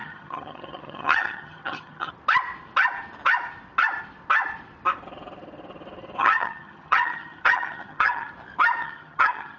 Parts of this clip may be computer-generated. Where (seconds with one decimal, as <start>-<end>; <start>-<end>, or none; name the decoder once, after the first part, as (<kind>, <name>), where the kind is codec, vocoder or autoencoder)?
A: 0.0-2.1 (vocoder, HiFi-GAN); 6.2-8.3; 8.8-9.6